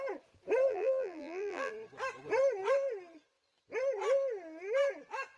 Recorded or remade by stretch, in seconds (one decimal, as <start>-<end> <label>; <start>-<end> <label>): 0.0-0.7 recorded; 0.7-1.7 remade; 1.7-5.4 recorded